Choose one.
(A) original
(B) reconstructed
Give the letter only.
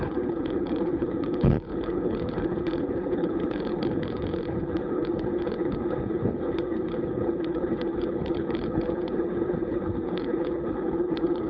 B